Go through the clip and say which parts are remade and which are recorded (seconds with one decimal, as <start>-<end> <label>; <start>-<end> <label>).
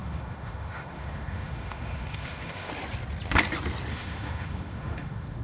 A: 0.0-2.7 remade; 2.7-3.9 recorded; 3.9-5.4 remade